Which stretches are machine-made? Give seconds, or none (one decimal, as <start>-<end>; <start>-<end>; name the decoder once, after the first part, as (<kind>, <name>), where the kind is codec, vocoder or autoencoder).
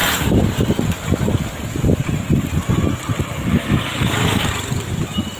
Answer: 3.6-4.5 (codec, DAC)